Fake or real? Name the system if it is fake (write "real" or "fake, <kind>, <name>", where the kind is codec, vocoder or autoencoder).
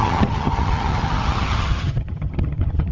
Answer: fake, vocoder, HiFi-GAN